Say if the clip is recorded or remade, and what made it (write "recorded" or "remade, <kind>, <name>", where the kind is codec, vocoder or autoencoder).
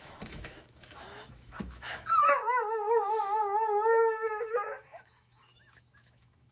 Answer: remade, autoencoder, DAC-VAE